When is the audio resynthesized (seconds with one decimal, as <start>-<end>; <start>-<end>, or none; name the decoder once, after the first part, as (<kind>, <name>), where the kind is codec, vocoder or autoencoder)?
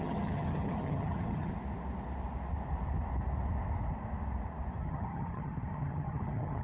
0.0-1.5 (vocoder, HiFi-GAN); 4.8-6.6